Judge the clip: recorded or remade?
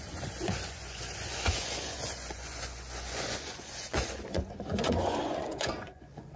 remade